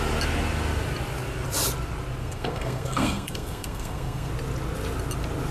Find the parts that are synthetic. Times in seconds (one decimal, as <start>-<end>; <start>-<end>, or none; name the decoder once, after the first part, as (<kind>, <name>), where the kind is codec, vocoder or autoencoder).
2.2-4.3 (codec, SNAC)